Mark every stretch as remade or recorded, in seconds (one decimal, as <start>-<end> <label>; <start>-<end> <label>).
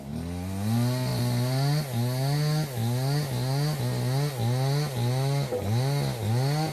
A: 0.0-6.7 recorded